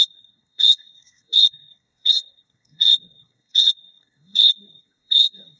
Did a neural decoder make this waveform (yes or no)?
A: yes